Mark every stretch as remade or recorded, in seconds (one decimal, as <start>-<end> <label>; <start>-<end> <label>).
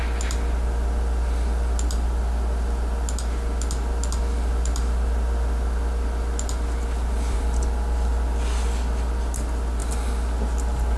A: 0.0-11.0 recorded